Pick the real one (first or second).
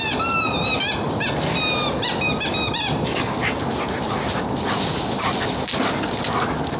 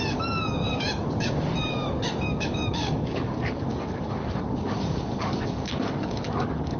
first